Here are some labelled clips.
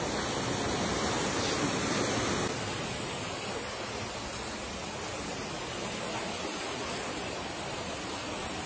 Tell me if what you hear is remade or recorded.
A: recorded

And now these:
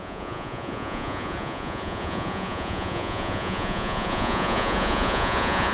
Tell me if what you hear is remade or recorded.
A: remade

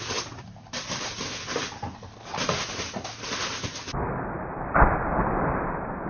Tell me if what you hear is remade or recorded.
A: recorded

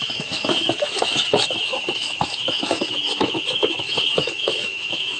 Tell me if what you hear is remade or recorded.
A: remade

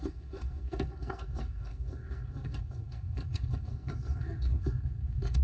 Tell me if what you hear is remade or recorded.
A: remade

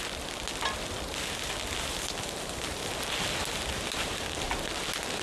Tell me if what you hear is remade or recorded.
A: recorded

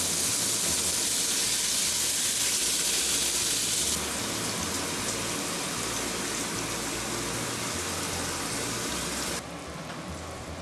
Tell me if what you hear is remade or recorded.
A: recorded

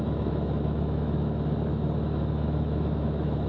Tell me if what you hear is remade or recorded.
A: remade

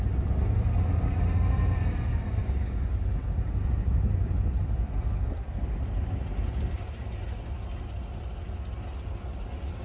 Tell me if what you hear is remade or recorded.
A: recorded